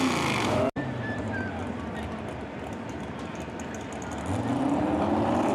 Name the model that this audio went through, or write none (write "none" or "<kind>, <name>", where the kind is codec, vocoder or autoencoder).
none